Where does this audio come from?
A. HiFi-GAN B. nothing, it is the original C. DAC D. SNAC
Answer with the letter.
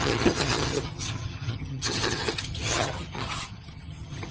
A